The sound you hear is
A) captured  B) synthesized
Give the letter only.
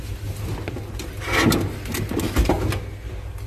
A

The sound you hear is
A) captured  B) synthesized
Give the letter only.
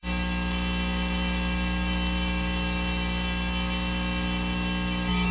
B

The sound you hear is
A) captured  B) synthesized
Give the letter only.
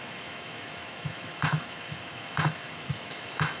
B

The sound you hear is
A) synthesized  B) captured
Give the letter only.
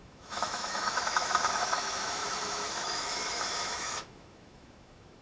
A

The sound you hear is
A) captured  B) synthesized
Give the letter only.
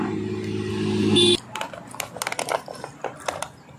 A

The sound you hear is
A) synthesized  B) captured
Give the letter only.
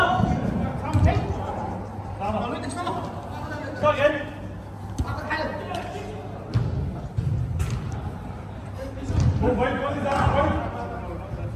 B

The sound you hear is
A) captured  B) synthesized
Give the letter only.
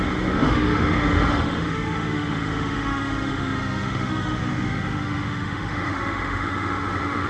B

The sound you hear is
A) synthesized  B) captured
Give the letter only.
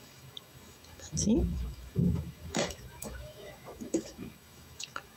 A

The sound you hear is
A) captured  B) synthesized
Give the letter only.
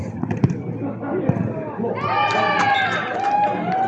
A